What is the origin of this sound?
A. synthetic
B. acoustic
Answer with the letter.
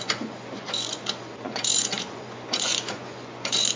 A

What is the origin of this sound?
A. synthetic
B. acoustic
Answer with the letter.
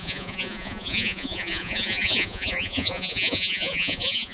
A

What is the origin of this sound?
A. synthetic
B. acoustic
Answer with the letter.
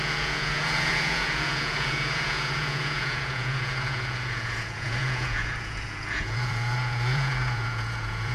A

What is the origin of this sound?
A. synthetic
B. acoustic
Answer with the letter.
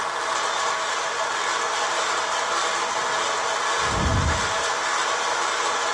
B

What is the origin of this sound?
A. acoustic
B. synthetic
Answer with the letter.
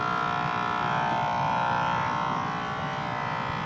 A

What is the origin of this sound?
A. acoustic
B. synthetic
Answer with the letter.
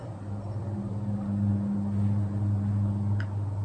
A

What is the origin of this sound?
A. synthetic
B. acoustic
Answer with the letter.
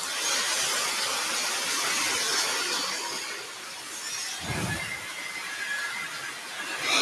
B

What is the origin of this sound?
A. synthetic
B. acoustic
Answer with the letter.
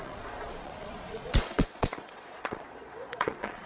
A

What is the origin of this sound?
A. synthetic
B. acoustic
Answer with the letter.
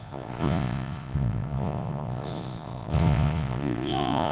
A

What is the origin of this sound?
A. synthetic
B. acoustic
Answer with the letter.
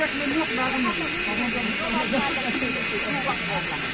B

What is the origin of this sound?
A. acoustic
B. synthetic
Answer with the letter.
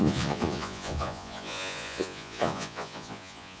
B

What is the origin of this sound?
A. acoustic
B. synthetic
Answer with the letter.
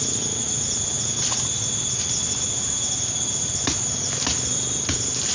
A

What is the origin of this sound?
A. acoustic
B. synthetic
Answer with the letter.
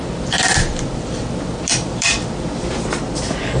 A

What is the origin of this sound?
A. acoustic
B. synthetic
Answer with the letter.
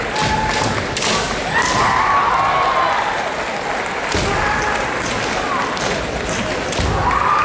A